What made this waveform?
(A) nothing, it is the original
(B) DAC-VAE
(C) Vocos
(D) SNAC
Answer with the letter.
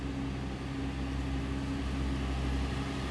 A